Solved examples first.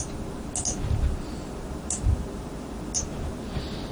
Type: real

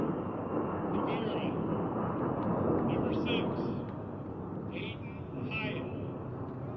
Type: real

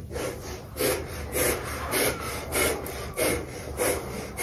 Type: fake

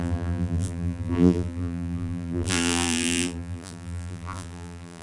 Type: fake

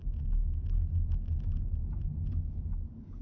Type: real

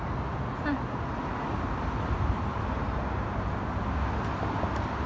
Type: real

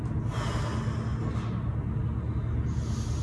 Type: real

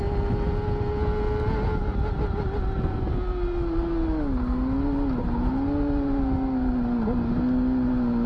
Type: real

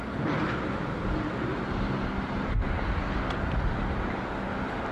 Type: real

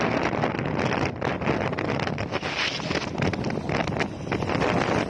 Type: real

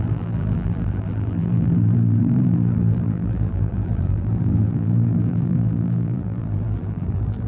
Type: fake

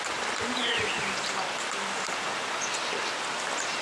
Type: real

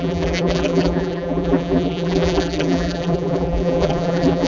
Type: fake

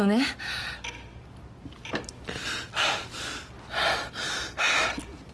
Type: real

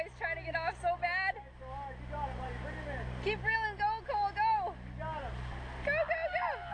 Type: real